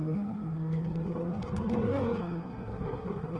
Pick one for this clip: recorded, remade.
remade